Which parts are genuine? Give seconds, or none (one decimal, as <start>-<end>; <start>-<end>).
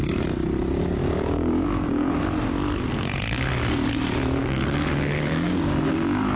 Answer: 0.0-1.0; 2.1-4.4